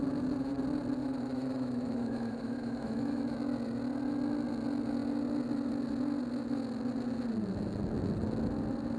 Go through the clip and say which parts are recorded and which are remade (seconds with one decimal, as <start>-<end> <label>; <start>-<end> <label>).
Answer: 0.0-1.0 recorded; 1.0-3.2 remade; 3.2-9.0 recorded